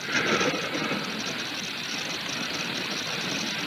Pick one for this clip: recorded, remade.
recorded